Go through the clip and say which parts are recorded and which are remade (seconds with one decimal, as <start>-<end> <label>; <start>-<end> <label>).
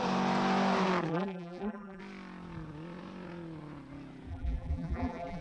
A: 0.0-1.1 recorded; 1.1-2.0 remade; 2.0-4.3 recorded; 4.3-5.4 remade